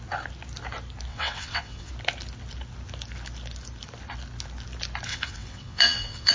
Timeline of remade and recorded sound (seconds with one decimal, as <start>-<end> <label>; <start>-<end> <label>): 0.0-1.1 recorded; 1.1-1.9 remade; 1.9-5.1 recorded; 5.1-6.3 remade